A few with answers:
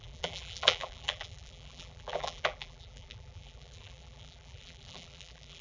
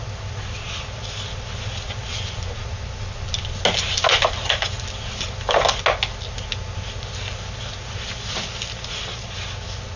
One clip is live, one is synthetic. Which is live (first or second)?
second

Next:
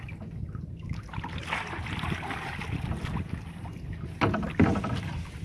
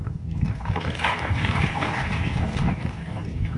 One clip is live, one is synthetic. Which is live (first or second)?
first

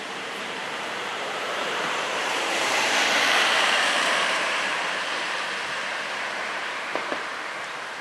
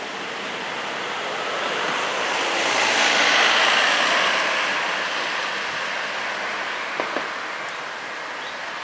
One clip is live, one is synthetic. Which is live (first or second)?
second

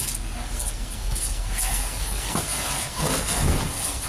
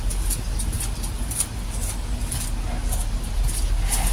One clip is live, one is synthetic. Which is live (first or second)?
second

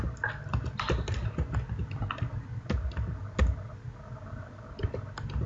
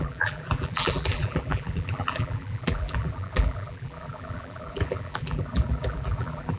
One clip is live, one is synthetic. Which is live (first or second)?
first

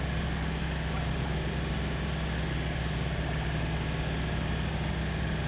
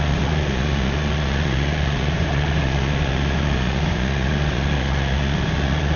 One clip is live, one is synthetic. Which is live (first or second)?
first